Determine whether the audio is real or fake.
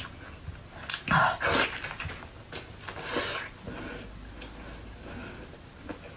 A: real